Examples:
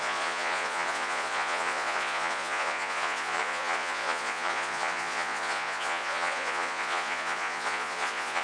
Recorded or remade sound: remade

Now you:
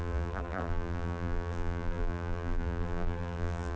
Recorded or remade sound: remade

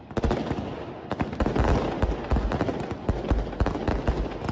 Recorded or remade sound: recorded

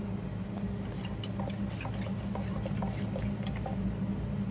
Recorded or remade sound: recorded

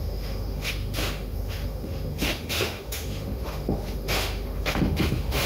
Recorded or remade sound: remade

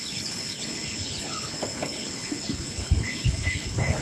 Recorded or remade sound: remade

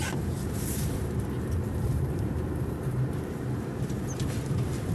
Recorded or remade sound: remade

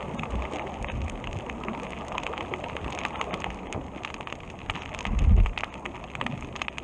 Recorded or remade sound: recorded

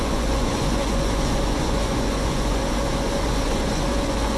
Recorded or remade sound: remade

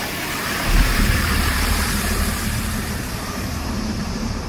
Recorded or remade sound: remade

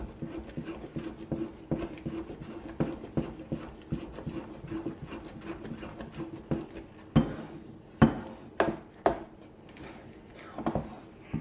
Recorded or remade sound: recorded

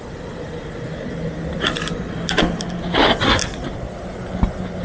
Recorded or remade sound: recorded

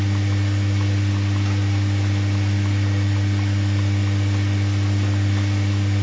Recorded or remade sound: recorded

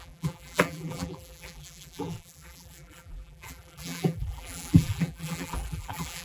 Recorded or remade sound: remade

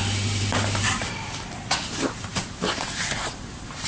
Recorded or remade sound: remade